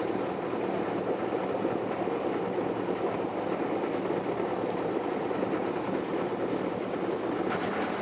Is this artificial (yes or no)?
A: no